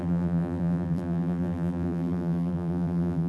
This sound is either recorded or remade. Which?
remade